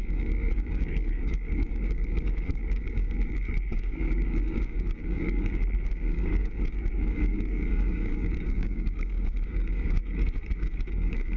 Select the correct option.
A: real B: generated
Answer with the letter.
B